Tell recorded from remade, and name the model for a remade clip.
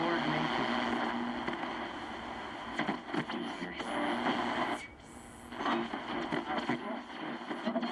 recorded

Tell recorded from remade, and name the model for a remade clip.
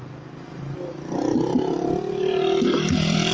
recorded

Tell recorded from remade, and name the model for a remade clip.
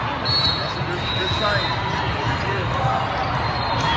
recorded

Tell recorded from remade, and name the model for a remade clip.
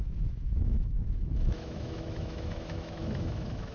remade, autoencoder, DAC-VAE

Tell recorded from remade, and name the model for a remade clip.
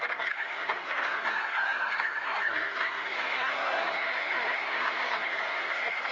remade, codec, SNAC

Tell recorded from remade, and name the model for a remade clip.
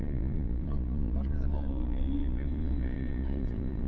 remade, vocoder, Vocos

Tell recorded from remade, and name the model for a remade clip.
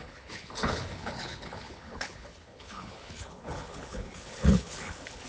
remade, codec, HILCodec